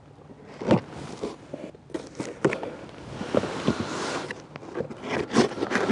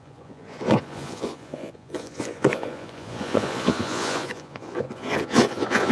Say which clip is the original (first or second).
first